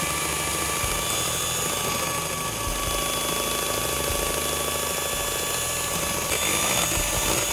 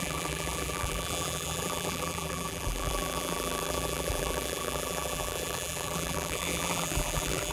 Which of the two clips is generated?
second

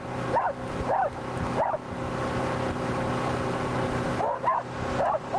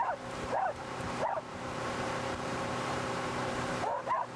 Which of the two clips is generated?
second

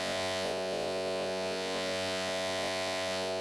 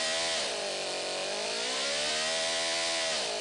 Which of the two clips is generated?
first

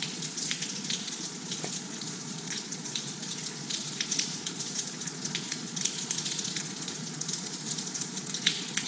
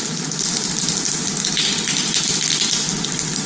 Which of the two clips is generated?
first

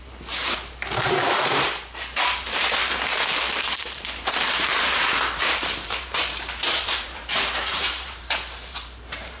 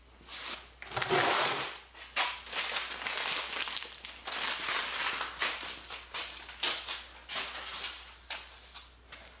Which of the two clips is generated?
first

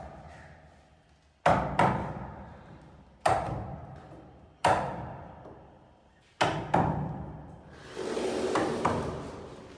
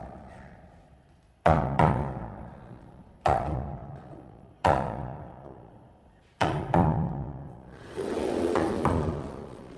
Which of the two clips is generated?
second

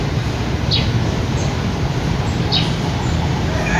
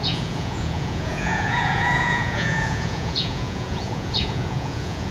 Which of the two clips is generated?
second